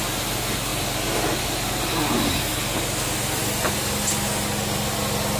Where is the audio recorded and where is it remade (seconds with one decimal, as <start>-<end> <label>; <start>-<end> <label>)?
0.0-5.4 recorded